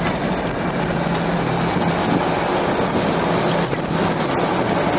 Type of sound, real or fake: real